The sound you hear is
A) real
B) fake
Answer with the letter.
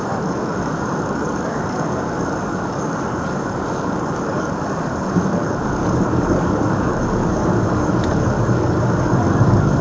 B